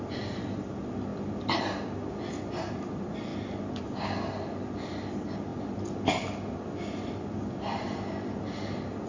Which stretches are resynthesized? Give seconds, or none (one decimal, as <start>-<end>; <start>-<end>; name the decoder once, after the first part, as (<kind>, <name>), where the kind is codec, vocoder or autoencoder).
none